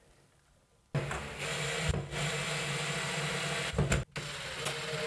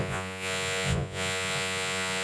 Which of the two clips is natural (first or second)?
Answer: first